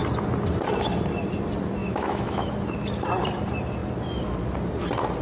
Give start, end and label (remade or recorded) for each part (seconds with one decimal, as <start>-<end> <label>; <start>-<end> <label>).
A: 0.0-1.8 recorded; 1.8-2.5 remade; 2.5-5.2 recorded